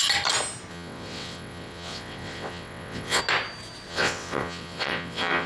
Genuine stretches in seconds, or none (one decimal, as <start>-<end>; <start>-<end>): 0.0-0.7; 3.2-3.9